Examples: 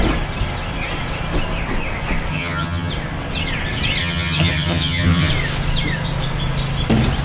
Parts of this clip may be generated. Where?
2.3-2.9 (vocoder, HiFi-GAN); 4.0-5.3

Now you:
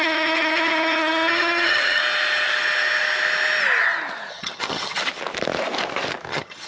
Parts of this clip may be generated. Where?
0.0-2.0 (vocoder, HiFi-GAN); 4.3-5.0; 6.3-6.7

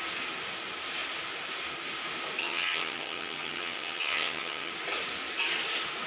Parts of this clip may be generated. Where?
2.4-4.7 (vocoder, HiFi-GAN)

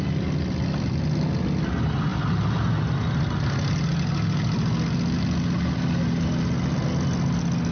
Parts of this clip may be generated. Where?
none

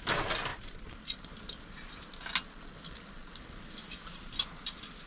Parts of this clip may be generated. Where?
none

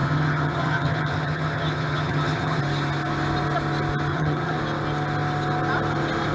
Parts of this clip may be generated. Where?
0.0-2.6 (vocoder, HiFi-GAN); 4.1-4.6

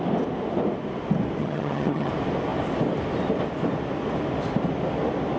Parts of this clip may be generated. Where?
1.4-2.1 (vocoder, HiFi-GAN)